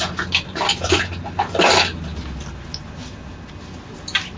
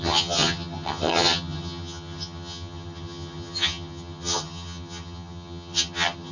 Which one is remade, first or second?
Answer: second